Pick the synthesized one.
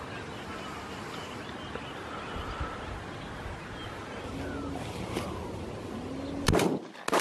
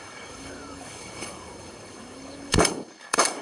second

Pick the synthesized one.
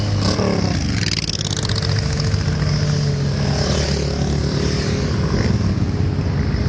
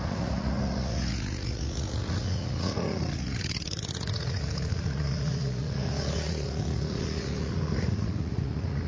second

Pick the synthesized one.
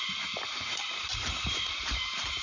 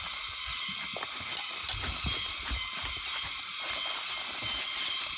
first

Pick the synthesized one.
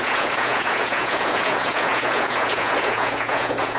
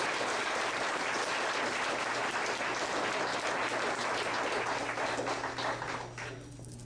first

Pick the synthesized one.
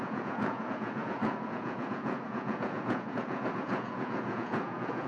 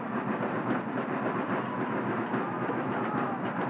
first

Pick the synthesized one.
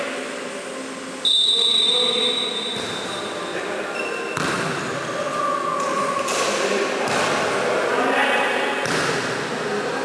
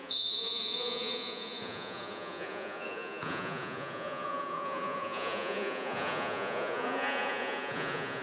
second